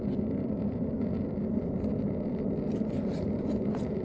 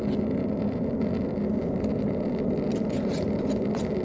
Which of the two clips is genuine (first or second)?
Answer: second